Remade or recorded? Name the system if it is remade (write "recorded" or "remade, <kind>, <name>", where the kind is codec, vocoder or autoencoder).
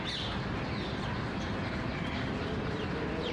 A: recorded